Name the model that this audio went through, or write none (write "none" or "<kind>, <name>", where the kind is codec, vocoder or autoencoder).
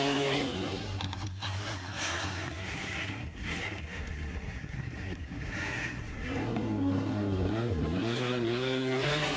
codec, SNAC